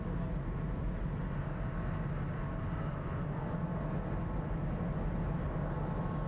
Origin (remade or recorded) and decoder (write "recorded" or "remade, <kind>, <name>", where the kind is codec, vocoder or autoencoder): recorded